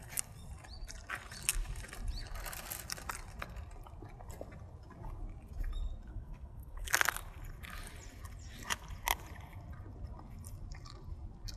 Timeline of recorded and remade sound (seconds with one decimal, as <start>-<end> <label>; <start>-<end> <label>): 0.0-6.1 recorded; 6.1-6.9 remade; 6.9-11.6 recorded